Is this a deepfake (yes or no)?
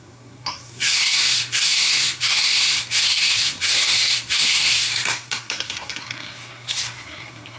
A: yes